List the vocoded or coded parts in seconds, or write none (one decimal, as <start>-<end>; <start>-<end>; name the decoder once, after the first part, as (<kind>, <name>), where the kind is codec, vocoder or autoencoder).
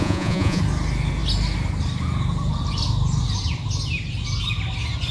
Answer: 0.0-0.6 (vocoder, Vocos)